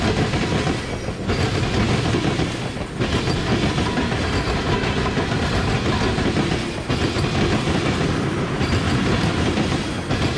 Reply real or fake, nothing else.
real